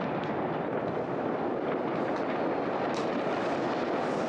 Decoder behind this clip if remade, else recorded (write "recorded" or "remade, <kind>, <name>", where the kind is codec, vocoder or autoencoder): recorded